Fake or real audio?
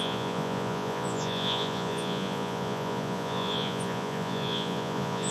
fake